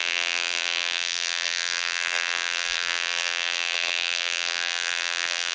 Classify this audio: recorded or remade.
remade